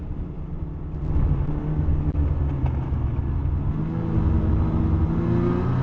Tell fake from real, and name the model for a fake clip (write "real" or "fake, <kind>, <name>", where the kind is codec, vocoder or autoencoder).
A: real